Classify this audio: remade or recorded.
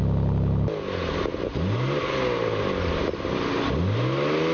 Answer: recorded